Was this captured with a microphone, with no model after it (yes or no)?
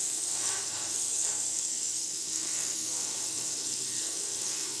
no